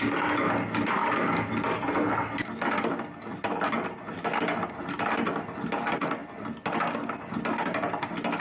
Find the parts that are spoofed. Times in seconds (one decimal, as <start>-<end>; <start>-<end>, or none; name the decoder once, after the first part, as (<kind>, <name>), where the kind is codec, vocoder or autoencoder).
1.0-1.5 (codec, DAC)